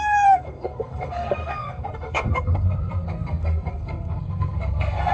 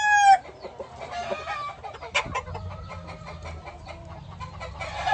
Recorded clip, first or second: second